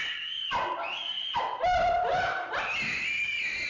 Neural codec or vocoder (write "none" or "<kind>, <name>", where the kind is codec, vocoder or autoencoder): none